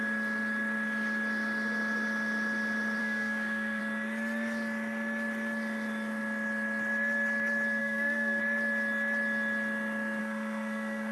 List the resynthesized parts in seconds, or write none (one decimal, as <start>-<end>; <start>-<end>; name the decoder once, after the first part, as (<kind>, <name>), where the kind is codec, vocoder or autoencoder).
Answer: 3.0-3.8 (codec, SNAC); 7.8-8.4; 10.2-11.1